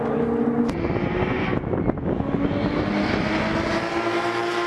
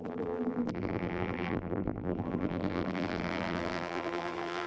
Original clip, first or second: first